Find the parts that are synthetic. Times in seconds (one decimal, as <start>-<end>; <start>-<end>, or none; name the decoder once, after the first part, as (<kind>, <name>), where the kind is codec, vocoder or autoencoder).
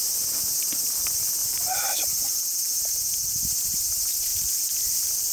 1.4-2.4 (vocoder, BigVGAN v2); 4.3-5.3